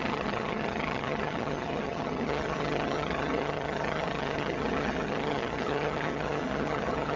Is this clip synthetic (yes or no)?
yes